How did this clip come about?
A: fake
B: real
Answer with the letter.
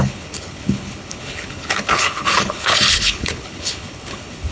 A